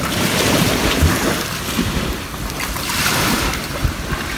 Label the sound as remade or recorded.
remade